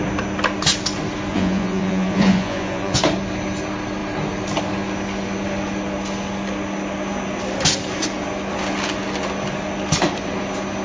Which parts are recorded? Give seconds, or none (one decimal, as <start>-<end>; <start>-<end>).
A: 0.0-1.3; 3.0-10.8